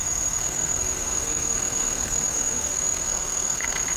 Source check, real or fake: fake